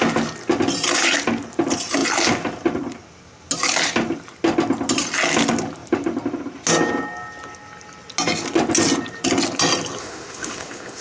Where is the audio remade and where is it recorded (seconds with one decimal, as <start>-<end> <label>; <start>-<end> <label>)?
0.0-10.0 recorded; 10.0-11.0 remade